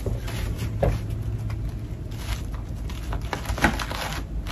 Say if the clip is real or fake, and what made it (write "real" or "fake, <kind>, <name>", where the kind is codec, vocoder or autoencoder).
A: real